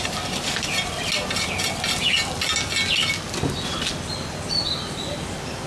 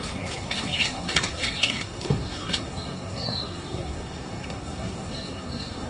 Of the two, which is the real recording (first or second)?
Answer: first